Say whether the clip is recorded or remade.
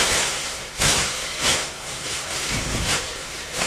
remade